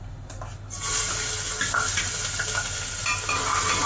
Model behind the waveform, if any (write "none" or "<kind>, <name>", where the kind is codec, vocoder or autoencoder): none